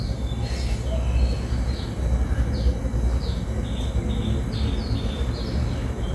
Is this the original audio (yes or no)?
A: yes